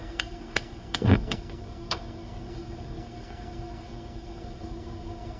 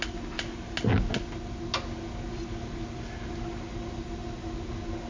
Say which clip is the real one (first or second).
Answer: second